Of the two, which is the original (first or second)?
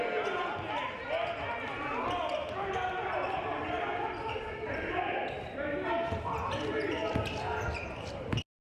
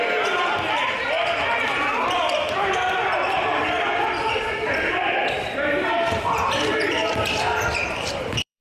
first